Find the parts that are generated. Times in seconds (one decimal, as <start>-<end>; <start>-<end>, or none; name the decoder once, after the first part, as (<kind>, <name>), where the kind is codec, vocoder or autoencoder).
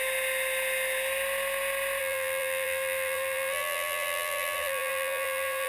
2.0-5.7 (vocoder, BigVGAN v2)